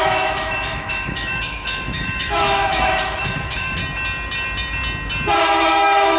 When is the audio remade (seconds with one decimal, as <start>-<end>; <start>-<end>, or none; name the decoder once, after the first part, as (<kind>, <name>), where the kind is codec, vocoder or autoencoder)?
0.0-3.8 (autoencoder, DAC-VAE); 5.5-6.2